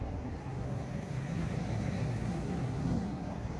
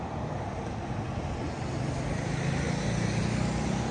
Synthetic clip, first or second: first